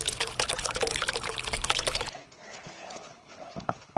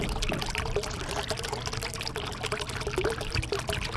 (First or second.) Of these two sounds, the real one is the second